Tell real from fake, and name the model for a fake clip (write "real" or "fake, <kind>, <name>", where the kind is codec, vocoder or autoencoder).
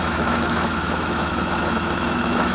fake, autoencoder, DAC-VAE